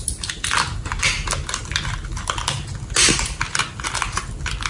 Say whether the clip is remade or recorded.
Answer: recorded